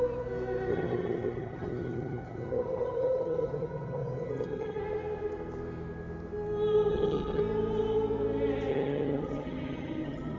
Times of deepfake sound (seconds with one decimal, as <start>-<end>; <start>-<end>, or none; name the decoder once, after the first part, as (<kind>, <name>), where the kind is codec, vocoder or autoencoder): 0.7-4.8 (vocoder, HiFi-GAN); 6.9-7.4; 8.7-10.4